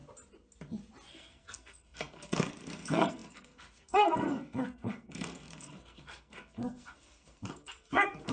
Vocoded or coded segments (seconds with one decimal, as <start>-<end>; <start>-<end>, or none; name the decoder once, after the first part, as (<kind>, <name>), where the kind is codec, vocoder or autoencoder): 1.1-8.3 (codec, SNAC)